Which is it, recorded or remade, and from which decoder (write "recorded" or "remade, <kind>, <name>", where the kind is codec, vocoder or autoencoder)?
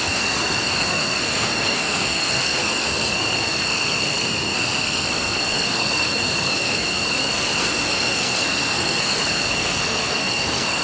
remade, codec, SNAC